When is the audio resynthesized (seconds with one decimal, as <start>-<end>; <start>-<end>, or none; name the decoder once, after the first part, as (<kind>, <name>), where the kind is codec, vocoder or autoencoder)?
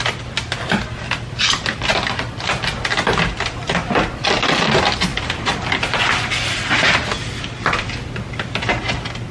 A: none